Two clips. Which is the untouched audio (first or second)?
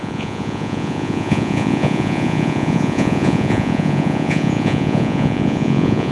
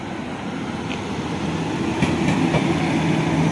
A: second